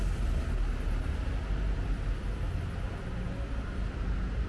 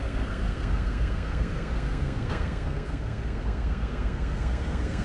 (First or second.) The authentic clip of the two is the first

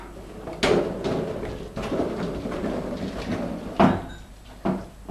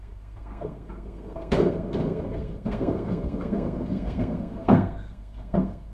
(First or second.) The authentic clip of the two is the first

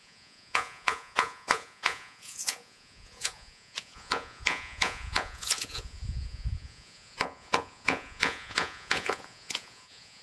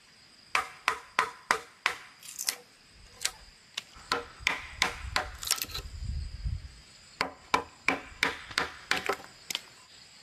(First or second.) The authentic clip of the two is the second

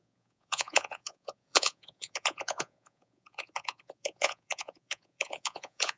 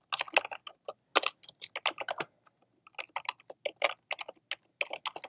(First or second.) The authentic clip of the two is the second